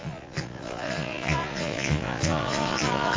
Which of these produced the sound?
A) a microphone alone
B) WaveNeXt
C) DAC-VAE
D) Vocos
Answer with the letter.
D